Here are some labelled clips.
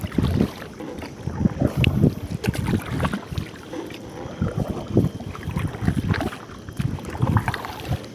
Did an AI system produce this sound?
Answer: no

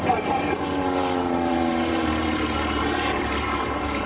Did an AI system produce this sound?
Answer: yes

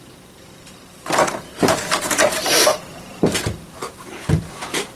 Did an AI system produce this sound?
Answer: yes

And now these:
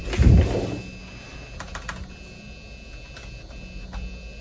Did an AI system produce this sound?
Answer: no